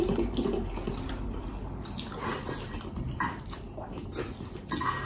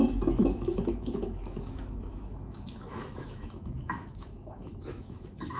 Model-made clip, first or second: second